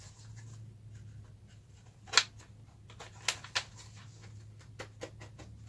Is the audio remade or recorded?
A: recorded